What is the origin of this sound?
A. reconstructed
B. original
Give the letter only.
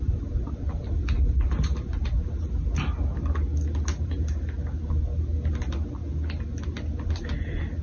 B